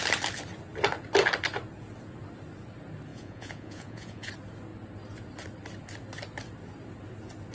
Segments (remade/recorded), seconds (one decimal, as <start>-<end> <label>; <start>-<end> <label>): 0.0-3.1 recorded; 3.1-4.3 remade; 4.3-7.5 recorded